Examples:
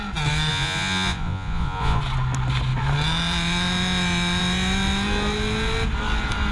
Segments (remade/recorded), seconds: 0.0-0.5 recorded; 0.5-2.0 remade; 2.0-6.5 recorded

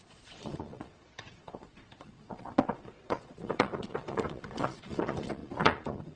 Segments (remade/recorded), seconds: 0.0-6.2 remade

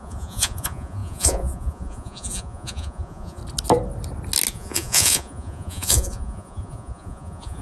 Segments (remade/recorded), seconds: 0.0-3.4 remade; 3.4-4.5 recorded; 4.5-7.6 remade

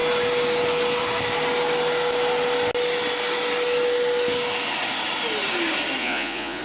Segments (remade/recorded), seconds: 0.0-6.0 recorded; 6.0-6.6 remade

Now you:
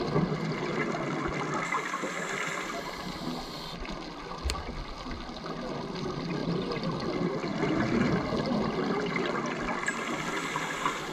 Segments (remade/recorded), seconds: 0.0-11.1 recorded

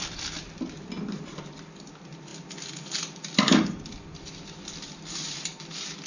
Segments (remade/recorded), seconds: 0.0-6.1 recorded